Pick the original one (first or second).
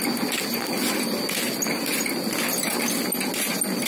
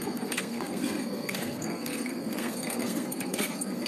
first